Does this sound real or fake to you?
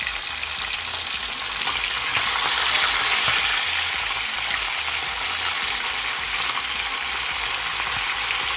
real